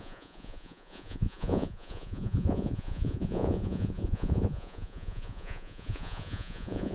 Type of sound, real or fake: fake